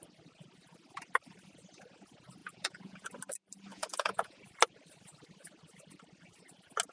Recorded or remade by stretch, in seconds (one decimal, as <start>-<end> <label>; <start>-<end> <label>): 0.0-2.4 recorded; 2.4-3.1 remade; 3.1-3.7 recorded; 3.7-4.4 remade; 4.4-6.9 recorded